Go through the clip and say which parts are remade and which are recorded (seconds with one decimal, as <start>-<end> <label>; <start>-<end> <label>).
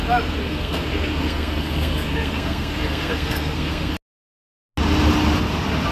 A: 0.0-0.4 recorded; 0.4-3.9 remade; 3.9-5.9 recorded